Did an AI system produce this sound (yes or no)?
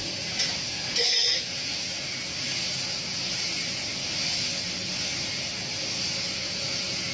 no